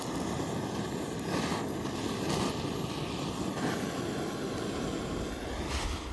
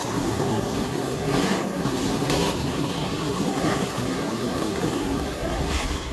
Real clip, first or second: first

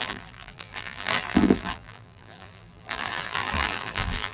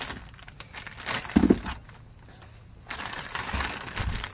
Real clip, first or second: second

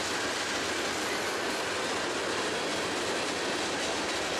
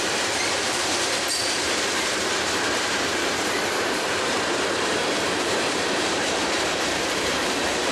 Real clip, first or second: first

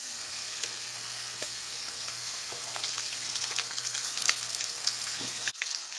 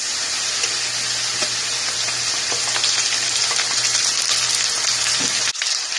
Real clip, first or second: second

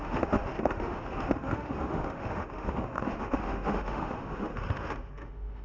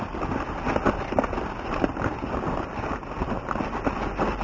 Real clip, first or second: second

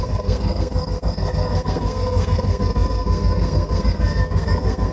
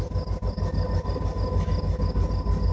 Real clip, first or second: second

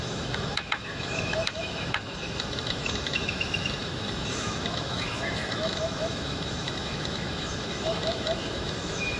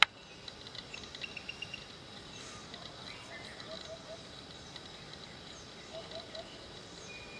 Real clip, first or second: second